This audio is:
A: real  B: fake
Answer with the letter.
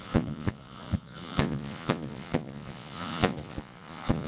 B